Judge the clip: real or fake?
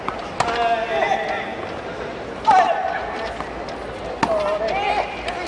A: real